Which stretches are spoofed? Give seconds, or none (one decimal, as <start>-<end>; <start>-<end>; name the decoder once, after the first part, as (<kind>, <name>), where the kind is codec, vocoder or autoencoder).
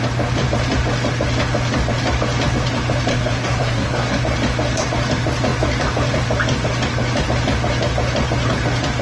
3.1-4.2 (codec, SNAC)